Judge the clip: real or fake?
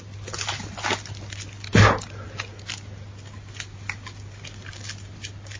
real